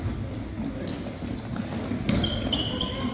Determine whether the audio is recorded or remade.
recorded